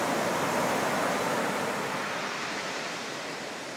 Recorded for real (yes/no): yes